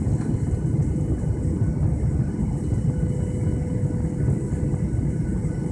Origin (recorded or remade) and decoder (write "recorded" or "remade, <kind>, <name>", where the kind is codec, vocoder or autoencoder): recorded